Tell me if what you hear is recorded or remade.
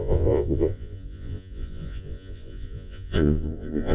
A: remade